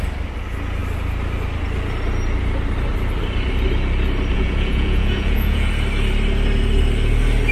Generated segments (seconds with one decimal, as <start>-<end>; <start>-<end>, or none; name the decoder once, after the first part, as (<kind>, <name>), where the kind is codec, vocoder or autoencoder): 4.3-5.7 (vocoder, Vocos)